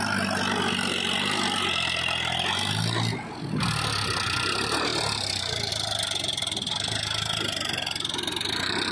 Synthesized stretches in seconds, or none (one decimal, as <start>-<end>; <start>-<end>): none